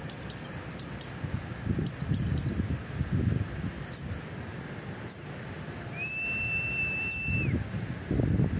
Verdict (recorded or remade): recorded